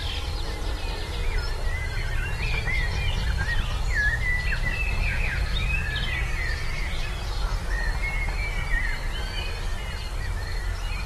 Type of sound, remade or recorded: recorded